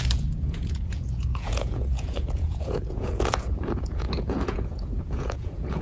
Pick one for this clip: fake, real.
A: fake